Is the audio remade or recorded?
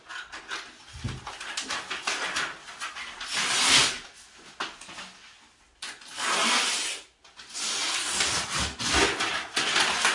recorded